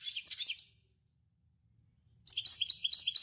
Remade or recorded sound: recorded